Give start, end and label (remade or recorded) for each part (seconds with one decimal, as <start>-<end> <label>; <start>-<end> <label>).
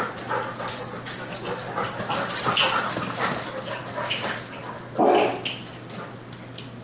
0.0-6.8 recorded